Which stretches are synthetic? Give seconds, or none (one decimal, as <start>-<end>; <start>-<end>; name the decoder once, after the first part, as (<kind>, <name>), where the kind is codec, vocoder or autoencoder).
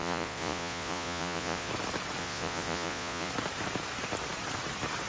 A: 0.0-1.7 (vocoder, Vocos); 2.2-3.3